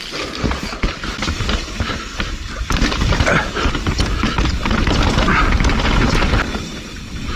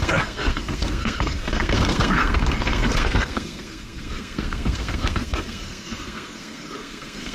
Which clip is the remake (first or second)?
second